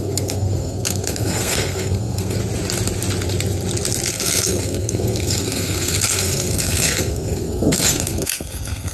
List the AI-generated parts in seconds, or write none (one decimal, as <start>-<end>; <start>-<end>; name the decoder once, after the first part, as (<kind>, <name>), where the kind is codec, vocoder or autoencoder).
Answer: 0.0-2.4 (codec, SNAC); 4.1-8.9